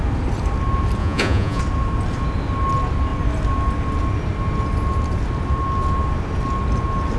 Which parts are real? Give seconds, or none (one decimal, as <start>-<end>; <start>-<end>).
0.0-1.0; 1.6-7.2

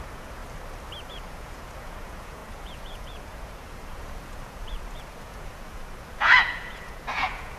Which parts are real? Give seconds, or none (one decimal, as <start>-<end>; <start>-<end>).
0.4-1.1